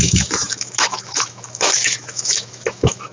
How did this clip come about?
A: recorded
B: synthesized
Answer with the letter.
B